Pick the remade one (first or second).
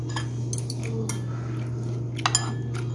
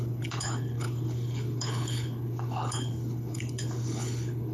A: second